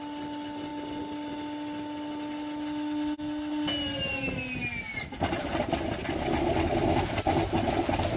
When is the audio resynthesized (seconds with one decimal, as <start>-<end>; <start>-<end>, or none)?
none